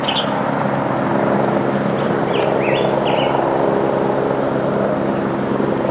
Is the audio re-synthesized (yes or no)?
no